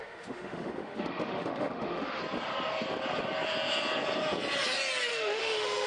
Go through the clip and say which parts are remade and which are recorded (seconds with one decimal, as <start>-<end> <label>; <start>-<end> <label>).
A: 0.0-2.2 remade; 2.2-5.1 recorded; 5.1-5.9 remade